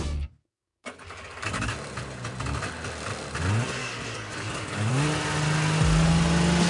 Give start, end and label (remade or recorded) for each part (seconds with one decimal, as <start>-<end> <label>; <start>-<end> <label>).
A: 0.0-0.4 recorded; 0.4-1.7 remade; 1.7-3.8 recorded; 3.8-4.9 remade; 4.9-6.7 recorded